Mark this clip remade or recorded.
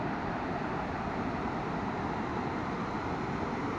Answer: recorded